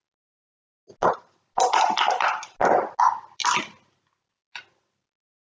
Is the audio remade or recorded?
recorded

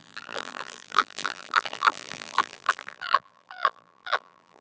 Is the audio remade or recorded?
remade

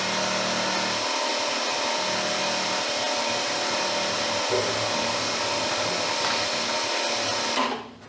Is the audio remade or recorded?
recorded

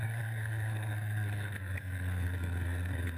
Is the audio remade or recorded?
remade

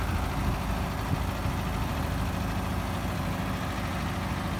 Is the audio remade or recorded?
recorded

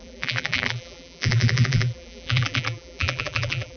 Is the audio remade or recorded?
remade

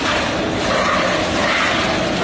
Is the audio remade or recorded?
recorded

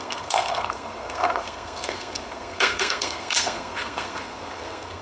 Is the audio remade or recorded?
remade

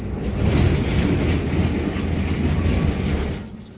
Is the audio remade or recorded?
recorded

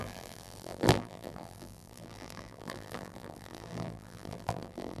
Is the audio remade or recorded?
remade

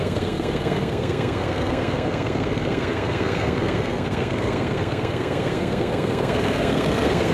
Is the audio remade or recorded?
remade